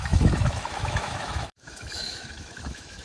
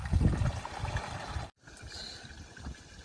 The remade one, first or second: first